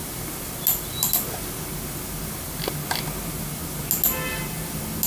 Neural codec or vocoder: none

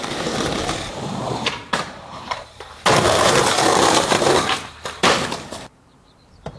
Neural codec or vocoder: vocoder, BigVGAN v2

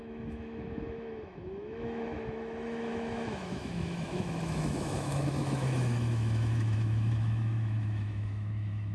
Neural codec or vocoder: autoencoder, DAC-VAE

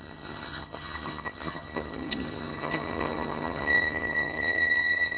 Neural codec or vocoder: vocoder, HiFi-GAN